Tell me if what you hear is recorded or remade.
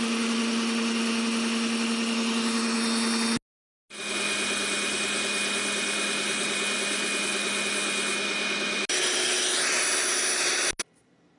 recorded